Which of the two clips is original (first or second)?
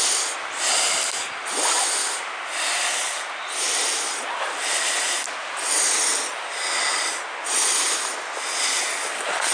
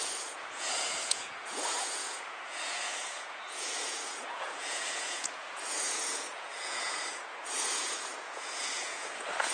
first